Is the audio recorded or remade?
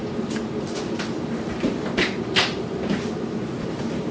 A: remade